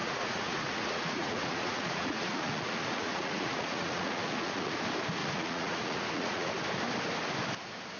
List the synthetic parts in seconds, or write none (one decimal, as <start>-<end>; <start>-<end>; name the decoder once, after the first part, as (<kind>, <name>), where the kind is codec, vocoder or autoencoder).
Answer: 0.0-4.8 (vocoder, Vocos); 5.2-6.5